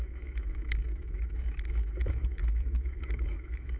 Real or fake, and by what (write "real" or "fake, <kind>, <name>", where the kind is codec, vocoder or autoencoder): fake, autoencoder, DAC-VAE